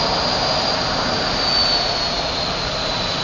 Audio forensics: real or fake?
real